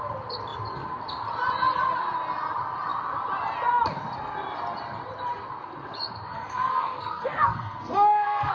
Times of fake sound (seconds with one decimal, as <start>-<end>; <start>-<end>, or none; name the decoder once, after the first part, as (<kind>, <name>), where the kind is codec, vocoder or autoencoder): 6.3-8.5 (codec, SNAC)

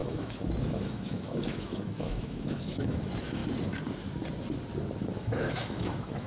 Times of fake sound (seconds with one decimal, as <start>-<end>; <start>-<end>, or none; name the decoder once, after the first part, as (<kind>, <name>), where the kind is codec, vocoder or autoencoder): 0.0-3.4 (autoencoder, DAC-VAE); 5.2-6.3